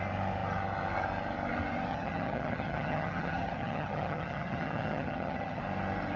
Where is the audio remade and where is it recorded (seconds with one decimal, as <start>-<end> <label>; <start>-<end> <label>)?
0.0-1.9 recorded; 1.9-5.6 remade; 5.6-6.2 recorded